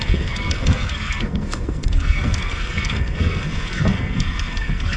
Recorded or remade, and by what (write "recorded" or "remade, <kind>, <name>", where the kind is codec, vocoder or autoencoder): remade, codec, SNAC